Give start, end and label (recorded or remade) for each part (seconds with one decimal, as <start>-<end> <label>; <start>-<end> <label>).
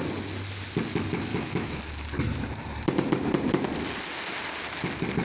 0.0-1.3 recorded; 1.3-1.8 remade; 1.8-5.2 recorded